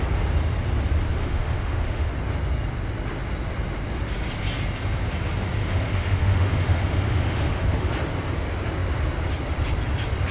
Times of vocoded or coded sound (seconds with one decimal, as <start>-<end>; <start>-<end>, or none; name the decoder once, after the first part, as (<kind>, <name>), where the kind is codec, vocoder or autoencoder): 1.2-2.1 (autoencoder, DAC-VAE); 5.6-7.9